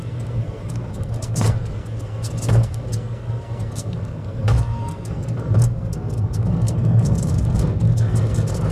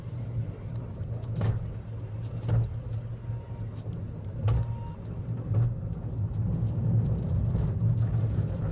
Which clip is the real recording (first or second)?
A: second